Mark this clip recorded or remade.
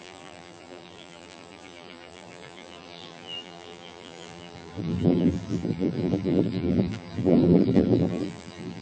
remade